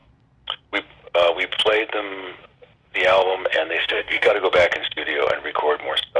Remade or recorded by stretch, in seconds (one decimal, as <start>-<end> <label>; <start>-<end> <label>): 0.0-3.8 recorded; 3.8-4.3 remade; 4.3-6.2 recorded